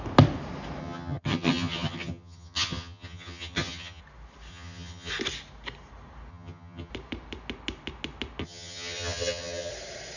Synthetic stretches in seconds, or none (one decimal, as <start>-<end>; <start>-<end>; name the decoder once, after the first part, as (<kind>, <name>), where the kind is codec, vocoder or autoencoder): 0.8-4.0 (vocoder, HiFi-GAN); 4.5-5.1; 6.3-6.9; 8.4-9.7